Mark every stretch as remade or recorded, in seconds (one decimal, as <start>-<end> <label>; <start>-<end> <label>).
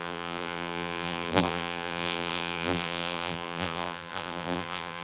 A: 0.0-5.0 remade